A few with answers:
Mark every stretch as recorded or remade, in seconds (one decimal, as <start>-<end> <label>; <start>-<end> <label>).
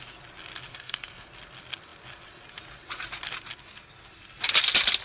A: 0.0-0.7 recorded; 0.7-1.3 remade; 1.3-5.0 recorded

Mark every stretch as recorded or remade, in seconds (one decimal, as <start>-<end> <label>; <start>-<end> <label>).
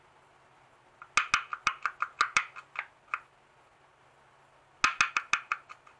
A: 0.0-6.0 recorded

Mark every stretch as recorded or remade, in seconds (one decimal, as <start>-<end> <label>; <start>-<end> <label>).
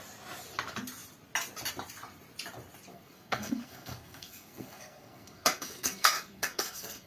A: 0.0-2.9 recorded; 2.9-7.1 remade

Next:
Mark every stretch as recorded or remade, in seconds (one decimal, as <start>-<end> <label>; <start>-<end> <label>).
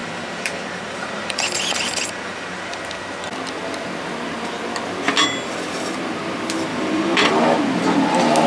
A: 0.0-2.8 remade; 2.8-6.7 recorded; 6.7-7.3 remade; 7.3-8.5 recorded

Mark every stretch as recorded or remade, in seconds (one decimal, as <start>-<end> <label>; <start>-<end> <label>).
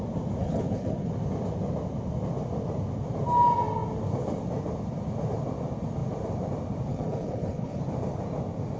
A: 0.0-0.4 recorded; 0.4-1.1 remade; 1.1-6.9 recorded; 6.9-7.8 remade; 7.8-8.8 recorded